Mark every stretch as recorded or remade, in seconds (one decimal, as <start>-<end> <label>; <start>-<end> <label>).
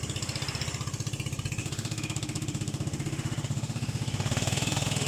0.0-1.6 recorded; 1.6-5.1 remade